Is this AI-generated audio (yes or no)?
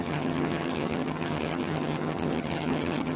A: yes